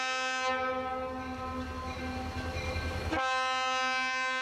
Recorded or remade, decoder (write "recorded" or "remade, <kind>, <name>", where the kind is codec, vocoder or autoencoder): recorded